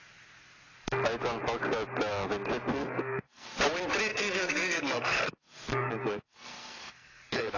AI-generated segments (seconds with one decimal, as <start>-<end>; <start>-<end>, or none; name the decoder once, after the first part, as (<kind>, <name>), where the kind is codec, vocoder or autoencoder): 2.7-3.5 (codec, SNAC); 4.1-7.6